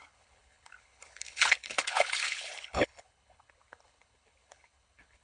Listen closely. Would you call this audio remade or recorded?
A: remade